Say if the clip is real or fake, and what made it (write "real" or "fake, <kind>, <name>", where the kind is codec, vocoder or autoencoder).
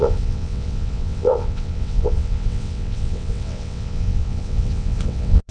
fake, vocoder, WaveNeXt